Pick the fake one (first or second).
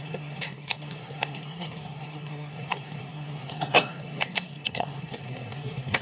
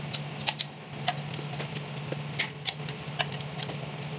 first